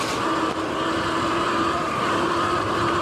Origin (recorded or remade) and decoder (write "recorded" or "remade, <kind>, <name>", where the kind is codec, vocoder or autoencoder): recorded